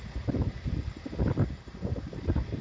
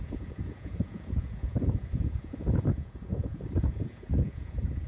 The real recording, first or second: first